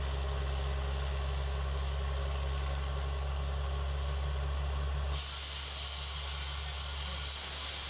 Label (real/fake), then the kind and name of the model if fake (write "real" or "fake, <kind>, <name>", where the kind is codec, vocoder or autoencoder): real